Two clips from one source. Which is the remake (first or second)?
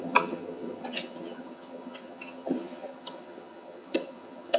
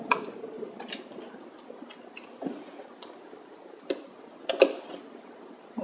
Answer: first